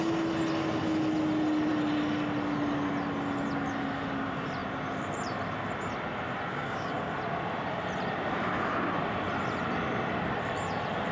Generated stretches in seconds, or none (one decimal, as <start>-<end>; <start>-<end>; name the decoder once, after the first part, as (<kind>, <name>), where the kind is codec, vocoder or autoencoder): 6.5-7.1 (codec, DAC)